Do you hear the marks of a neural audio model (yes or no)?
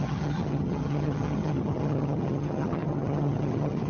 yes